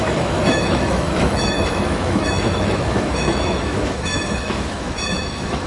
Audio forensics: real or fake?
fake